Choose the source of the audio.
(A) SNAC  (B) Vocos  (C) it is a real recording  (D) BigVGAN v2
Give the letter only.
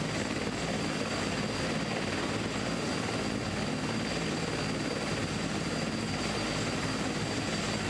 C